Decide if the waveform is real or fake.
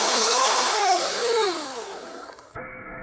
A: fake